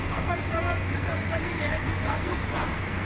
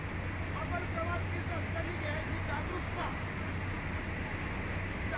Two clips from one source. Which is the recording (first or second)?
second